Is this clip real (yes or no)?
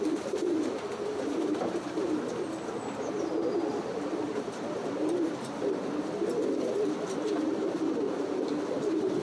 no